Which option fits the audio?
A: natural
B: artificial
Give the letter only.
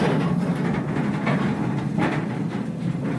A